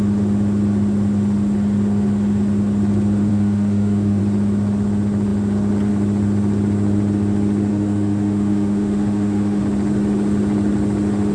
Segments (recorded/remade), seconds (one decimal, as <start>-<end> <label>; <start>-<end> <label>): 0.0-3.3 recorded; 3.3-4.2 remade; 4.2-7.7 recorded; 7.7-9.6 remade; 9.6-11.3 recorded